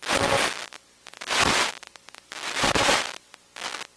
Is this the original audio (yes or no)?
yes